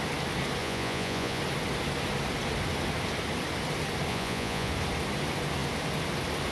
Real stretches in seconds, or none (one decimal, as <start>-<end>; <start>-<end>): 0.0-0.6; 1.4-4.1; 4.7-6.5